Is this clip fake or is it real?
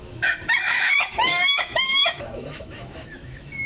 fake